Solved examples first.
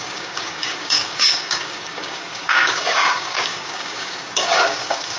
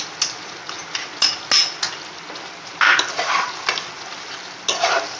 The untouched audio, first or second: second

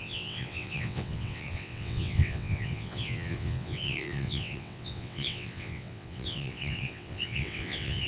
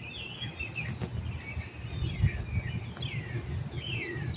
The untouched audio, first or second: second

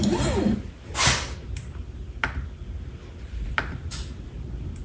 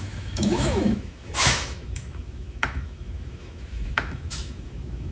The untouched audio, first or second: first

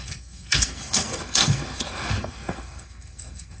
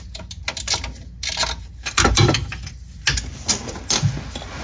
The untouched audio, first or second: second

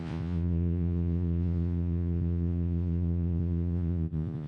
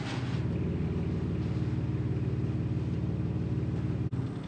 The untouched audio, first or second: second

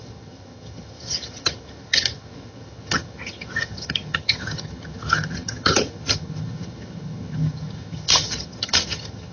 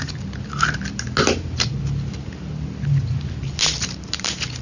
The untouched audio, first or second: second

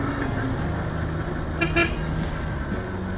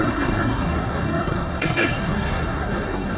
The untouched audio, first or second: first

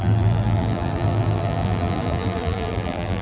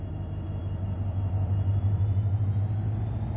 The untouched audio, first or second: second